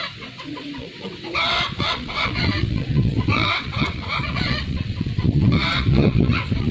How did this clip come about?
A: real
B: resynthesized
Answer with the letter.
B